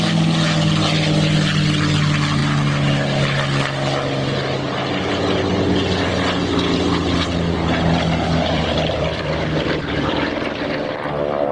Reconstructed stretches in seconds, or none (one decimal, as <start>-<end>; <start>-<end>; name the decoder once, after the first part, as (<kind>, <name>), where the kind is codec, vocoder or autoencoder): 8.5-11.5 (vocoder, BigVGAN v2)